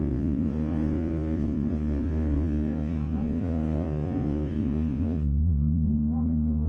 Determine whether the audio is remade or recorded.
remade